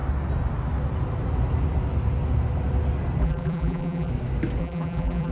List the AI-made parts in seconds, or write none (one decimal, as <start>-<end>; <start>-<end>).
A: 3.2-4.1; 4.6-5.3